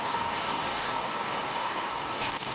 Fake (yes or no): yes